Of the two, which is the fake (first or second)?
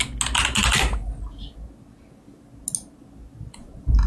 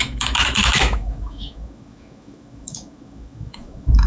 second